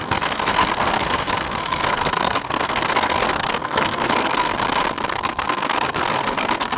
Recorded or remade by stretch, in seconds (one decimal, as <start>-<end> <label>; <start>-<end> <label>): 0.0-4.5 remade; 4.5-5.1 recorded; 5.1-6.8 remade